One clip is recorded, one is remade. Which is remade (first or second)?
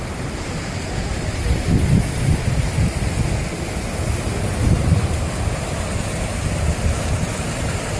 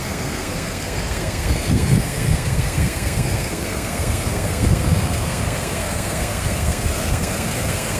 second